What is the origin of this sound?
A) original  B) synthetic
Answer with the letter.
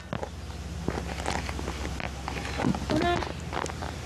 A